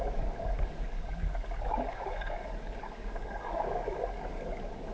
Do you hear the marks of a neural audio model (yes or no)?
yes